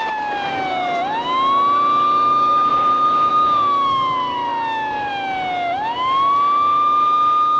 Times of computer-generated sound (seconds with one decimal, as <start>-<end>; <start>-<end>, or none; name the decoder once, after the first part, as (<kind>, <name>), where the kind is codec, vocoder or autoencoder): 2.7-3.3 (vocoder, BigVGAN v2)